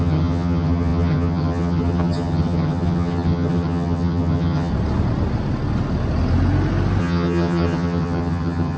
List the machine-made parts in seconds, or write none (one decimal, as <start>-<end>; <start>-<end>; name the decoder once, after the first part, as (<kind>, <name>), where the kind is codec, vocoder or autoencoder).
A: 0.0-4.7 (vocoder, HiFi-GAN); 7.0-8.8